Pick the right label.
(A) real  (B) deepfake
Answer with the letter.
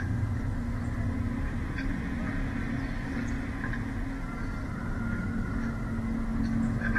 A